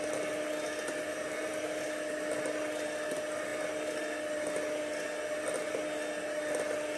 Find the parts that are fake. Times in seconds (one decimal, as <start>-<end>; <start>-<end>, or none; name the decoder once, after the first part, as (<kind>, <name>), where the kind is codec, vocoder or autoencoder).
none